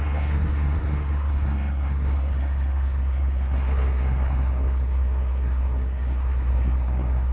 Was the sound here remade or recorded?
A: remade